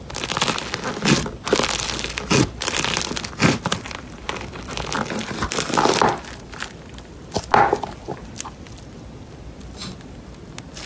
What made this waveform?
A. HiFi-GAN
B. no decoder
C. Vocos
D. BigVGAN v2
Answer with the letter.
B